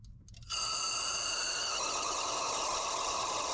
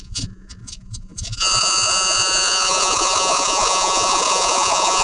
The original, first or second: first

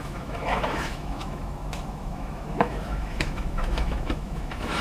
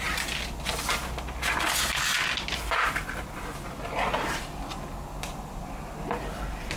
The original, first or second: second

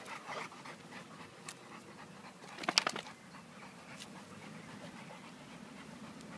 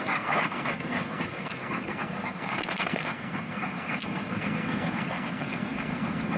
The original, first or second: first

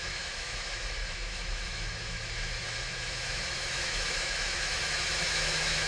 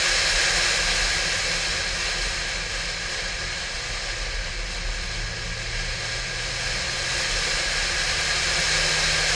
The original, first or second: second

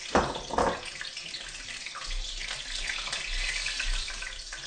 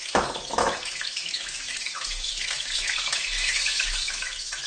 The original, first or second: first